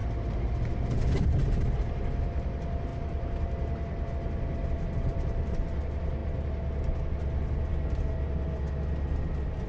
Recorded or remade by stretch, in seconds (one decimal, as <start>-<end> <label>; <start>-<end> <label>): 0.0-9.7 recorded